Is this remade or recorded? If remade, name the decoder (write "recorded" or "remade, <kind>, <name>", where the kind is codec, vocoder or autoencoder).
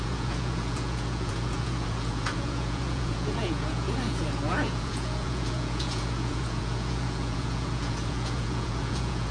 remade, vocoder, Vocos